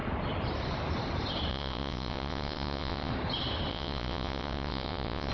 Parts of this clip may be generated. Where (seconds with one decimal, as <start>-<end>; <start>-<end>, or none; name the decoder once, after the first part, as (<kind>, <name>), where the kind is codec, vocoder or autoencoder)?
1.5-3.1 (vocoder, WaveNeXt); 3.7-5.3